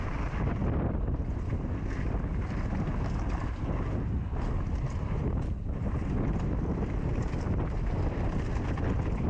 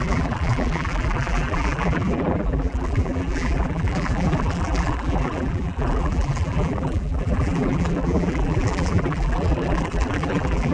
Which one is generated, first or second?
second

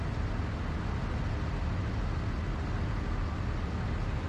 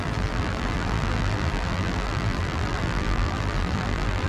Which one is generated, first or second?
second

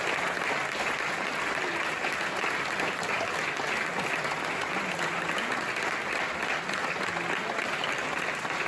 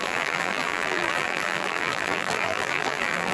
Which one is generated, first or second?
second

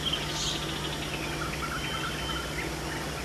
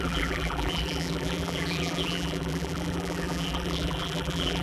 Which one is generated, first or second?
second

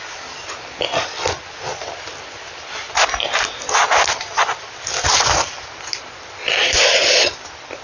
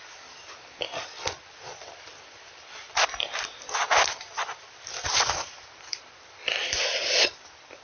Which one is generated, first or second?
second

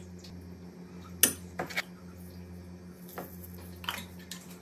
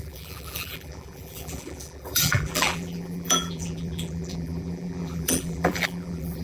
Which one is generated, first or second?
second